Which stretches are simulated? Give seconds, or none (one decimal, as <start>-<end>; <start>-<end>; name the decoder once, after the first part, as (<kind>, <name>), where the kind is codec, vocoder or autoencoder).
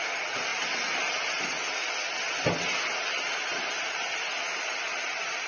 none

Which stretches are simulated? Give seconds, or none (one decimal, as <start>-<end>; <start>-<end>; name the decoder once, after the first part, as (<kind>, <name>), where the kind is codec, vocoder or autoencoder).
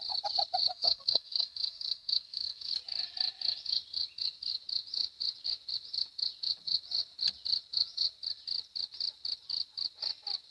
0.7-2.7 (codec, SNAC)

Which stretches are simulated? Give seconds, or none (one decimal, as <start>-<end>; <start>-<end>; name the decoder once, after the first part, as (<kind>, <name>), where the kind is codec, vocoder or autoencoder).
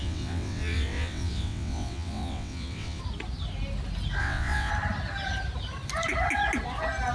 0.0-3.0 (vocoder, WaveNeXt); 4.2-4.7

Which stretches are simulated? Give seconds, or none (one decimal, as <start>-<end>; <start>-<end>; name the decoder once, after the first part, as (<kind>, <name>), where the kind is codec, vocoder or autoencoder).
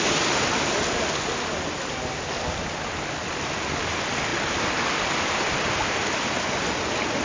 none